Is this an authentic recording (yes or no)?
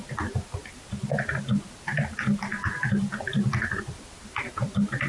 yes